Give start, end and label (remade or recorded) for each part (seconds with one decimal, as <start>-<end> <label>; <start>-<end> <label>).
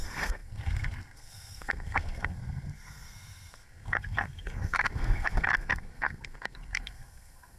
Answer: 0.0-7.6 remade